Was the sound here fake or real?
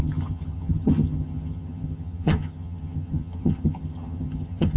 fake